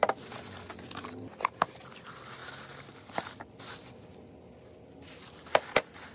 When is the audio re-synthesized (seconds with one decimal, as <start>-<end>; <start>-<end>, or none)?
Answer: none